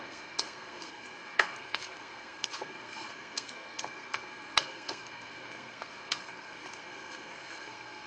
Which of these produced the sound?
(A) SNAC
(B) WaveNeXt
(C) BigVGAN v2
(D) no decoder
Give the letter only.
A